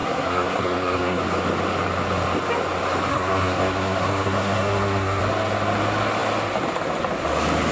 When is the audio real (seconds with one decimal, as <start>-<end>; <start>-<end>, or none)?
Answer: 1.2-3.1; 5.2-7.7